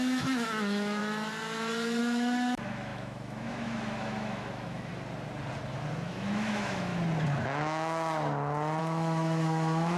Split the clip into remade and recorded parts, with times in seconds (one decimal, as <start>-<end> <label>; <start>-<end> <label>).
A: 0.0-1.0 remade; 1.0-2.0 recorded; 2.0-4.9 remade; 4.9-6.1 recorded; 6.1-6.9 remade; 6.9-8.8 recorded; 8.8-10.0 remade